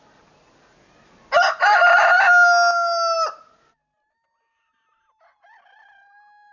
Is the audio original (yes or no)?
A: yes